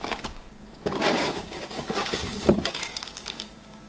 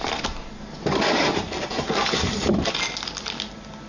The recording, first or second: second